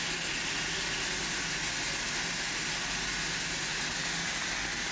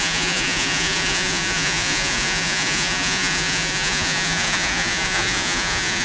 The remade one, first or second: second